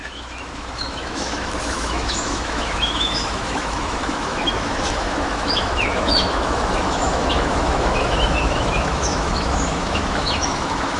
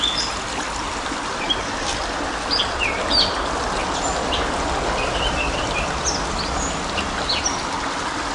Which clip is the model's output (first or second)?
first